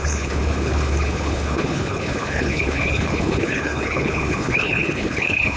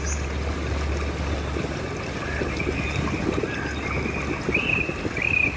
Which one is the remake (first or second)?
first